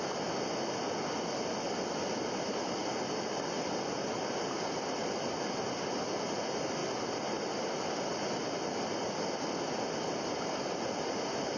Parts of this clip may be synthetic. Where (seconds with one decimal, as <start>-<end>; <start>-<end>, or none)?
none